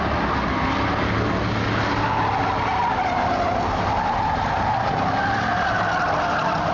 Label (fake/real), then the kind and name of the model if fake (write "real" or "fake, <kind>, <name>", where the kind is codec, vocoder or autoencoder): real